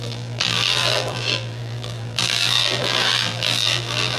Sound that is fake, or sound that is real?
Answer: fake